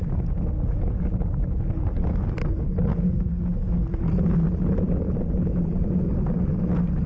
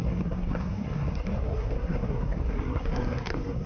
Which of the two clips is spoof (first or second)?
second